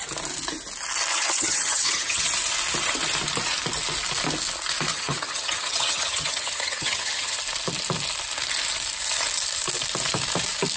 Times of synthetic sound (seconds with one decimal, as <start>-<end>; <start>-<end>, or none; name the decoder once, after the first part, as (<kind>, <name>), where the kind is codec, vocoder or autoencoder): 1.1-2.2 (vocoder, HiFi-GAN); 4.9-7.4